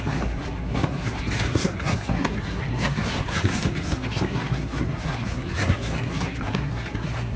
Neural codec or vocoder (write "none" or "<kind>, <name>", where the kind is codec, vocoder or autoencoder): codec, SNAC